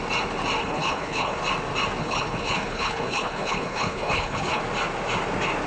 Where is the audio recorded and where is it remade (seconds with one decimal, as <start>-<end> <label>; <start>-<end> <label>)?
0.0-0.6 recorded; 0.6-1.4 remade; 1.4-2.0 recorded; 2.0-4.6 remade; 4.6-5.7 recorded